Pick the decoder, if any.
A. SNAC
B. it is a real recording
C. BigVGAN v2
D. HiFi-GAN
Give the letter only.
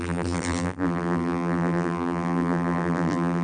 C